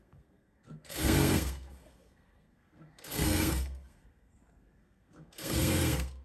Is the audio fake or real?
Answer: fake